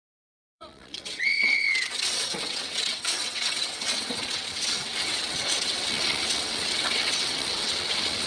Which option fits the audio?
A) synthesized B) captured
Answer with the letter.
A